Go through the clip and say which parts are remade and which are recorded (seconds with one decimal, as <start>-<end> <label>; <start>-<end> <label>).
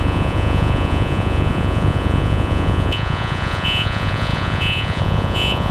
0.0-5.7 remade